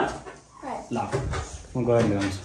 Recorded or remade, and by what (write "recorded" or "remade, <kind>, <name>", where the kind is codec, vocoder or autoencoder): recorded